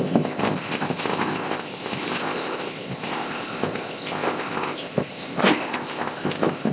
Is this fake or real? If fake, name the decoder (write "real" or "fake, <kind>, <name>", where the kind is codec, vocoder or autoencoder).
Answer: fake, codec, ZipCodec